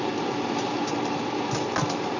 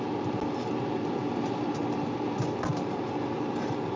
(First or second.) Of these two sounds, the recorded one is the second